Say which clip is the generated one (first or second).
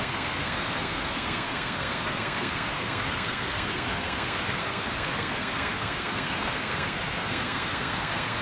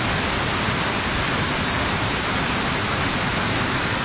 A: first